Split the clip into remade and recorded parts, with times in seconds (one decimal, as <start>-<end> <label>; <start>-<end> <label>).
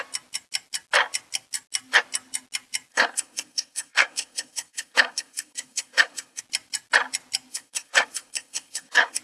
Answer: 0.0-2.9 recorded; 2.9-6.4 remade; 6.4-7.5 recorded; 7.5-9.2 remade